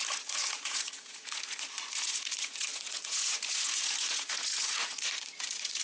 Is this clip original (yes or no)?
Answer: no